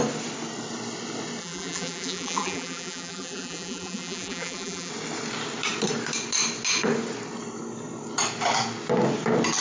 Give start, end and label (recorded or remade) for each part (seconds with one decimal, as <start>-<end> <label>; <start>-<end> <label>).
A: 0.0-1.4 recorded; 1.4-4.9 remade; 4.9-9.6 recorded